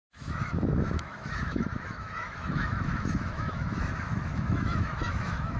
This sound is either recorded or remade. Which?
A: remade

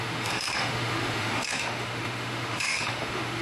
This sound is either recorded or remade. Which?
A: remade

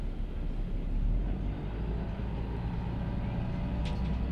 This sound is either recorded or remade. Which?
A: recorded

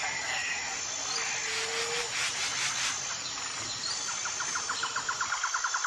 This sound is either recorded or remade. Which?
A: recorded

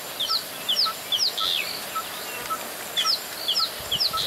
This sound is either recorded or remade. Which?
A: recorded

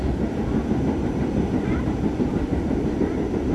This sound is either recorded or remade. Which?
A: recorded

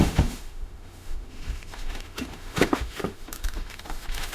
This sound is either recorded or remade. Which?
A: remade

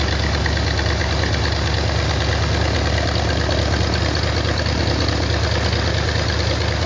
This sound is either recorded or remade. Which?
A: recorded